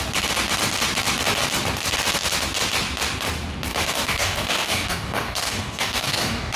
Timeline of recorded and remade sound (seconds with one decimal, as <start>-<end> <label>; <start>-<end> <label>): 0.0-3.7 recorded; 3.7-6.6 remade